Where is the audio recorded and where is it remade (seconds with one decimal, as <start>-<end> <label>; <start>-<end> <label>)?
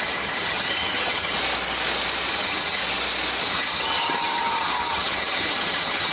0.0-1.3 remade; 1.3-2.3 recorded; 2.3-2.8 remade; 2.8-3.4 recorded; 3.4-6.1 remade